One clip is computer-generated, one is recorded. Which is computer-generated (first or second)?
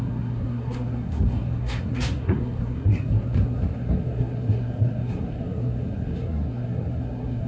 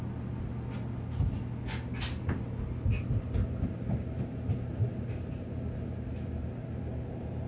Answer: first